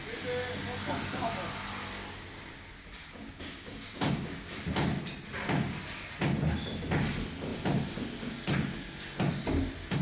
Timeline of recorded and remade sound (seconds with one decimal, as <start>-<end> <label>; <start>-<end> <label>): 0.0-3.0 recorded; 3.0-4.6 remade; 4.6-10.0 recorded